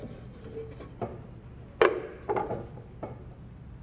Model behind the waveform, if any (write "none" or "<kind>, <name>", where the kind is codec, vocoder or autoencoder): none